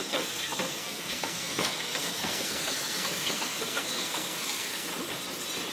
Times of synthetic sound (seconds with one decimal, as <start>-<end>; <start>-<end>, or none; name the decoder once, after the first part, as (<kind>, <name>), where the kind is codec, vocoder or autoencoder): 0.0-4.9 (codec, SNAC)